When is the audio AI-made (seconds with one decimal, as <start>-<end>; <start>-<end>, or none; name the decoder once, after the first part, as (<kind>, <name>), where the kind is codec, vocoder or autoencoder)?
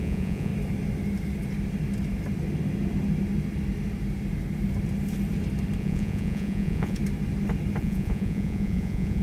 0.0-0.5 (vocoder, Vocos); 5.8-7.0; 7.8-9.2